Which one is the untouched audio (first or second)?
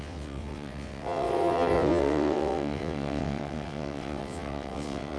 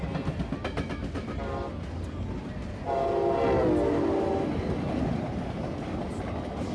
second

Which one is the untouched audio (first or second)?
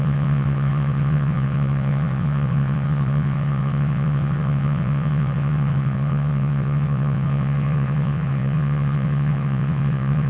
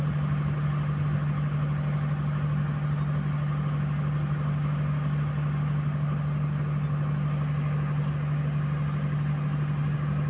second